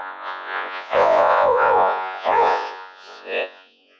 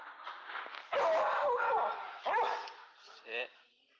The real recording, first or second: second